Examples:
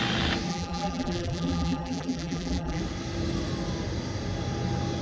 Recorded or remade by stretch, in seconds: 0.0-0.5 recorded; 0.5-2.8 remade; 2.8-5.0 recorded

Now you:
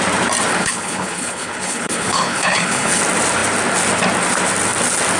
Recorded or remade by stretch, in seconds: 0.0-0.6 recorded; 0.6-3.0 remade; 3.0-5.2 recorded

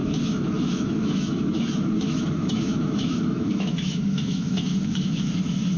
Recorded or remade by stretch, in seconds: 0.0-5.8 remade

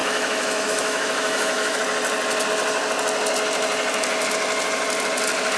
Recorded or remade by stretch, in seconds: 0.0-1.8 remade; 1.8-5.6 recorded

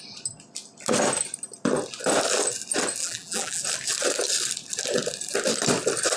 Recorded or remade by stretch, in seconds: 0.0-3.0 recorded; 3.0-3.6 remade; 3.6-6.2 recorded